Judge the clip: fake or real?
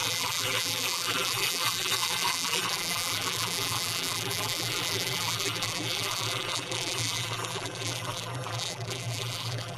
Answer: fake